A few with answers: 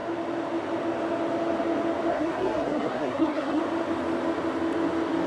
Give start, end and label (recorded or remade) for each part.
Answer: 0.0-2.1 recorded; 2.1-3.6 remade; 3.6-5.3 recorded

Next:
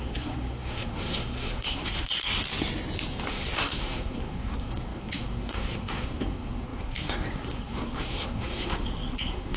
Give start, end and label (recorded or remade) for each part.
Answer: 0.0-2.3 remade; 2.3-3.3 recorded; 3.3-9.6 remade